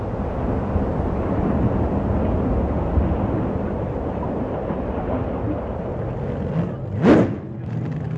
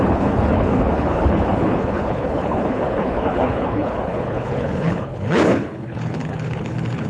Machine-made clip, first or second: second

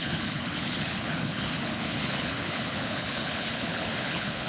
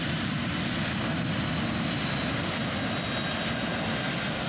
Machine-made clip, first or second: first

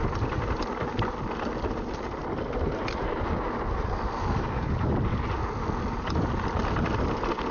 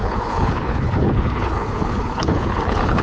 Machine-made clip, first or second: second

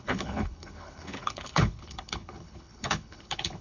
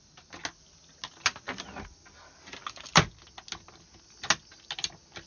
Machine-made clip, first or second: first